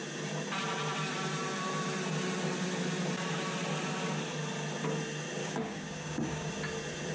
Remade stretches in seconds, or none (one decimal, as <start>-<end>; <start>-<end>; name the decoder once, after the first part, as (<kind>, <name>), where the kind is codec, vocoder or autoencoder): 5.4-6.5 (codec, DAC)